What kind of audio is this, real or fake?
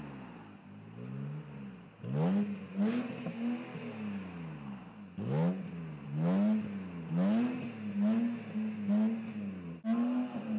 real